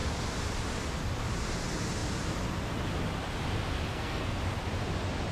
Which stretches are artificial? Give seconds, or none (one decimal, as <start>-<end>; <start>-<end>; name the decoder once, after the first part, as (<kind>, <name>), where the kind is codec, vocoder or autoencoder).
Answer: 3.9-4.4 (codec, SNAC)